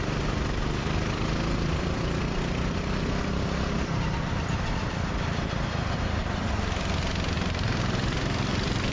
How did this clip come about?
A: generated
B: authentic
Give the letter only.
A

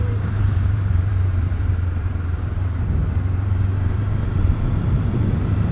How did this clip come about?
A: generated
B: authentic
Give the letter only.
A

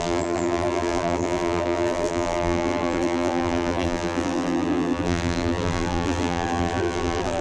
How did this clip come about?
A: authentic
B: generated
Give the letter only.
B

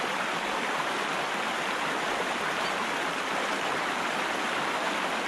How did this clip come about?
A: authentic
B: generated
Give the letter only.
A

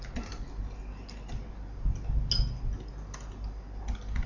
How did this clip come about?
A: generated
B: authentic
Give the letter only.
B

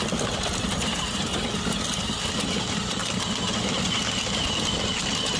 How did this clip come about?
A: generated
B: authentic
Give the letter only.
B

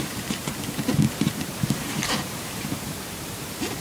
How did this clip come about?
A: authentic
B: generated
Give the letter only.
B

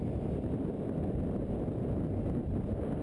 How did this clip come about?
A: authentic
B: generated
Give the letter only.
A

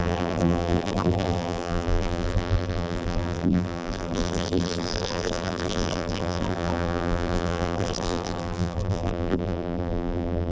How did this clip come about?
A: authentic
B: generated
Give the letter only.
B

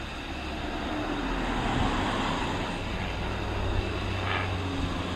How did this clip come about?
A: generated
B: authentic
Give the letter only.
B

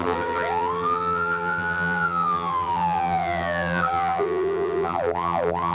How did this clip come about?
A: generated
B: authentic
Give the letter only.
A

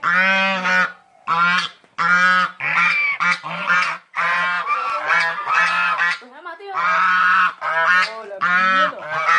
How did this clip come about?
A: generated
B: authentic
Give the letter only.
B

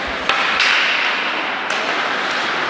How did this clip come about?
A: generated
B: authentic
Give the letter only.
B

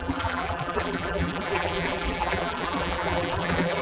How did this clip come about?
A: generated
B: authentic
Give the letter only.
A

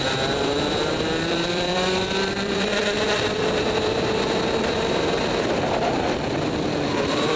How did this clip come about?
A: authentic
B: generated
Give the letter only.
B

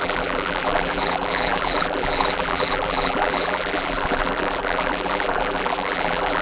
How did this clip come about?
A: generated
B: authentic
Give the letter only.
A